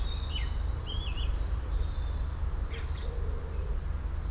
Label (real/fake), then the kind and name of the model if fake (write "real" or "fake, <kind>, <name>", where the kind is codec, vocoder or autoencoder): real